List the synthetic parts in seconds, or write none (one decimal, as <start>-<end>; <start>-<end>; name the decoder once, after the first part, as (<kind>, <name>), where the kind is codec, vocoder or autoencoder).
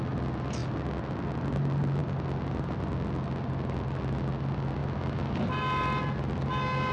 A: none